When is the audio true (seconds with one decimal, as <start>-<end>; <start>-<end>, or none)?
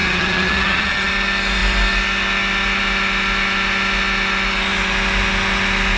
1.1-6.0